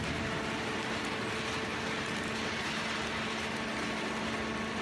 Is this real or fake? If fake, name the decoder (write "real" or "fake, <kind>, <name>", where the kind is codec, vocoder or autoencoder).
real